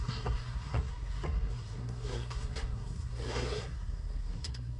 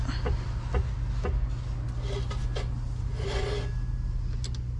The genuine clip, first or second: second